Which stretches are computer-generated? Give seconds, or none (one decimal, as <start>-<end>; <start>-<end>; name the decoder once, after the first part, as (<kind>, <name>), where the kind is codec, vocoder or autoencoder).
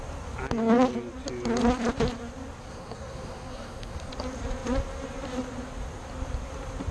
2.6-4.1 (codec, SNAC)